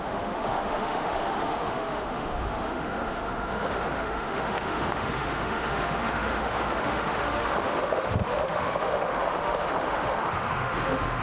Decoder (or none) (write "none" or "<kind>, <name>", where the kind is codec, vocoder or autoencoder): autoencoder, DAC-VAE